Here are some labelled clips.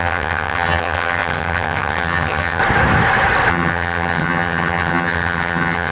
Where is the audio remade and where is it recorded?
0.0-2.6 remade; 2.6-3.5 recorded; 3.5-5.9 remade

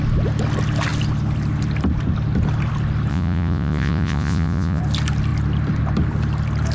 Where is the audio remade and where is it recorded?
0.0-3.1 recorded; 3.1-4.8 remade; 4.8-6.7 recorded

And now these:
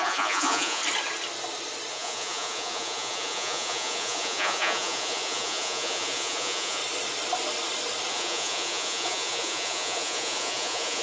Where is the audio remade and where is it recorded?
0.0-0.8 remade; 0.8-1.9 recorded; 1.9-6.8 remade; 6.8-8.1 recorded; 8.1-11.0 remade

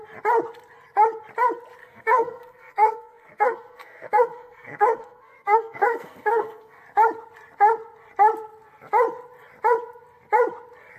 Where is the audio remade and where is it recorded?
0.0-1.8 recorded; 1.8-6.8 remade; 6.8-11.0 recorded

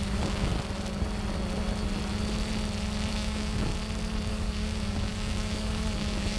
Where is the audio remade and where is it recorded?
0.0-0.5 remade; 0.5-3.1 recorded; 3.1-3.7 remade; 3.7-4.3 recorded; 4.3-6.4 remade

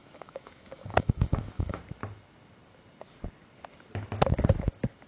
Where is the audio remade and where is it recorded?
0.0-1.8 remade; 1.8-5.1 recorded

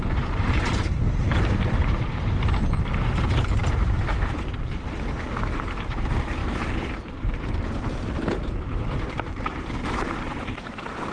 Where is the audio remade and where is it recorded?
0.0-11.1 remade